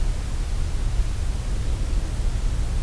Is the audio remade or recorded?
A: recorded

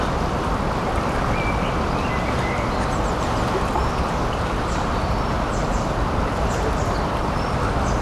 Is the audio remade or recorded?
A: recorded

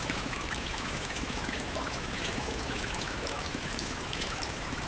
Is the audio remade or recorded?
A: remade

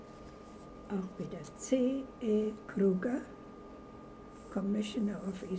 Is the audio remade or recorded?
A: recorded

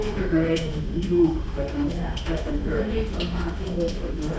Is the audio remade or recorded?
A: remade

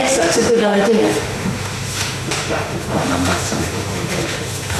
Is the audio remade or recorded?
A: remade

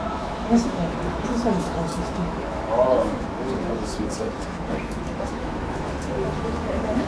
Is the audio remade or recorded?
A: remade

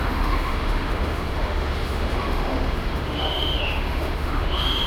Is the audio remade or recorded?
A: remade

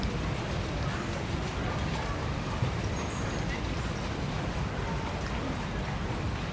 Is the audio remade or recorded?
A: remade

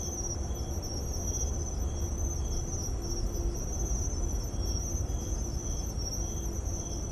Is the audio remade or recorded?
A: recorded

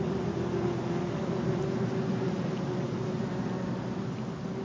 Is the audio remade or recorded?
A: recorded